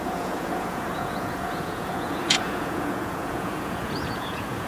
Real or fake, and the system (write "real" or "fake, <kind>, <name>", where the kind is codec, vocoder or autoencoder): fake, vocoder, Vocos